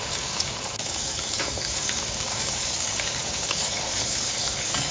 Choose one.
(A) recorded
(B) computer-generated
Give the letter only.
B